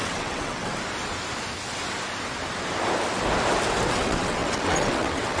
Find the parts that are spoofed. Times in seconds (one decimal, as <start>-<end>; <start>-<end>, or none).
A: 0.0-0.7; 3.9-5.4